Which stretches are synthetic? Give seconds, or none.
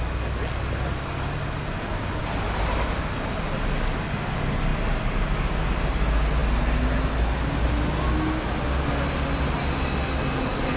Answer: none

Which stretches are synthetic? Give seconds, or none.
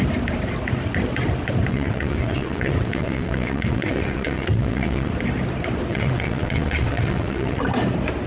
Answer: 1.7-5.1 (vocoder, WaveNeXt); 5.9-7.6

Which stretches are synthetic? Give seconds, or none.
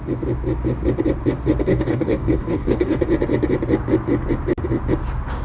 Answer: 1.6-3.0 (codec, DAC)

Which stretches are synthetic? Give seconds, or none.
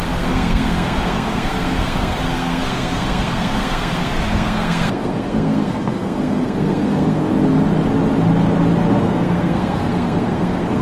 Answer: 0.0-7.3 (codec, SNAC); 9.0-10.8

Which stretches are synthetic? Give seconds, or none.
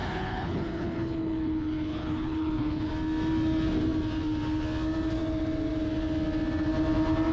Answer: 0.0-2.9 (codec, HILCodec)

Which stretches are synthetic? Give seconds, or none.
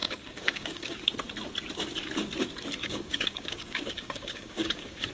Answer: 0.0-1.0 (codec, DAC); 2.8-5.1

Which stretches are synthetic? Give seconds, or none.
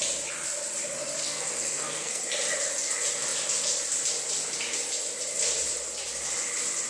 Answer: 1.2-2.2 (codec, SNAC)